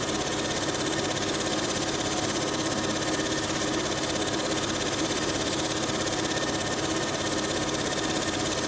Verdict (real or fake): real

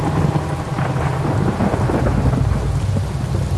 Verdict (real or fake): real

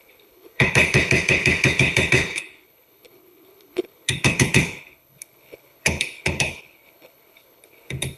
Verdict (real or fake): fake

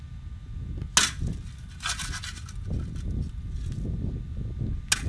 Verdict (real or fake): real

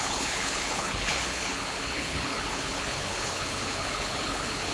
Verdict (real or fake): fake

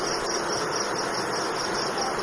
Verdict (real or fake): real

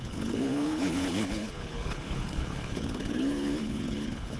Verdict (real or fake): fake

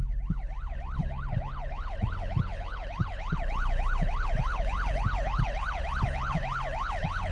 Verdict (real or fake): fake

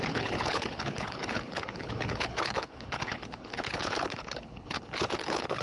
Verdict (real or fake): fake